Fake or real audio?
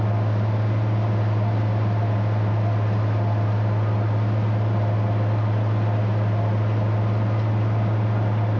real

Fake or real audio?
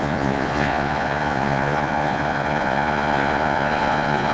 fake